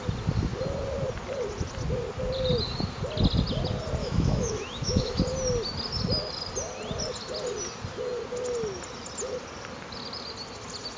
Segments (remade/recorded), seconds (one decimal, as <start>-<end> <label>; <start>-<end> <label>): 0.0-4.0 recorded; 4.0-5.2 remade; 5.2-11.0 recorded